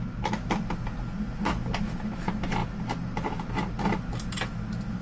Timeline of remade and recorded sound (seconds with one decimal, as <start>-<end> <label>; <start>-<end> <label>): 0.0-5.0 recorded